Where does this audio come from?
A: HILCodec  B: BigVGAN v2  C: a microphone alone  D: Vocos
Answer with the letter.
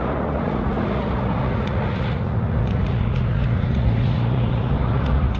D